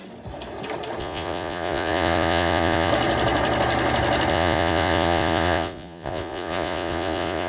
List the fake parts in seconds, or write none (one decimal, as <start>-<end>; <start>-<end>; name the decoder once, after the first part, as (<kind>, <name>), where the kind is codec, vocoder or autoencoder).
1.0-2.9 (vocoder, Vocos); 4.3-7.5